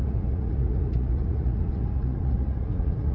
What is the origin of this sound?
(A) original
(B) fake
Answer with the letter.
B